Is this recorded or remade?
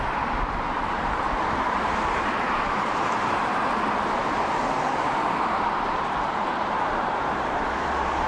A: remade